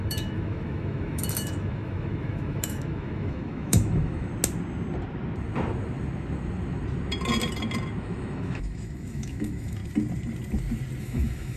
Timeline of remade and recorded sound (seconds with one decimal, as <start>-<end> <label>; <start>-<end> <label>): 0.0-4.3 remade; 4.3-8.0 recorded; 8.0-9.8 remade; 9.8-11.0 recorded; 11.0-11.6 remade